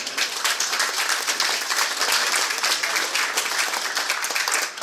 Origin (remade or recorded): recorded